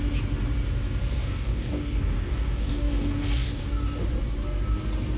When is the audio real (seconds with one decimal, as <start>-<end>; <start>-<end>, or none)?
0.0-1.2; 3.6-5.2